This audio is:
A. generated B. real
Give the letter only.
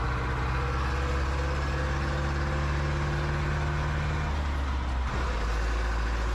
B